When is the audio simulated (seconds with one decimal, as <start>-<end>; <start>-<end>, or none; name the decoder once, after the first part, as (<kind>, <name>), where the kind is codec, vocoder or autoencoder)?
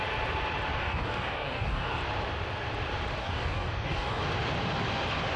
0.8-2.0 (codec, DAC); 3.2-4.2